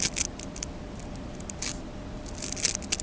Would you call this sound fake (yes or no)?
no